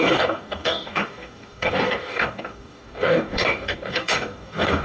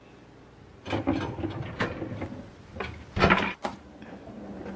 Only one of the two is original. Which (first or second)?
second